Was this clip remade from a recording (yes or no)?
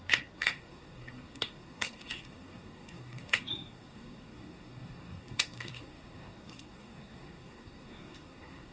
yes